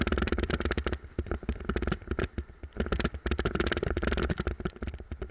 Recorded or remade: remade